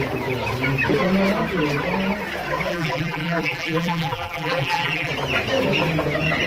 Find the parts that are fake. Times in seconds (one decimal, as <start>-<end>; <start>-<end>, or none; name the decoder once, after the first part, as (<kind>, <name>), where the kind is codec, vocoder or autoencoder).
2.7-5.1 (vocoder, BigVGAN v2)